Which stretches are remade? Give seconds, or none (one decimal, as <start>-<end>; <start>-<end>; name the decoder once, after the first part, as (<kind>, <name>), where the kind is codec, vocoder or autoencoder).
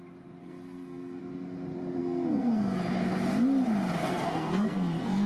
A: 0.4-1.2 (codec, SNAC); 2.0-2.8; 4.0-5.3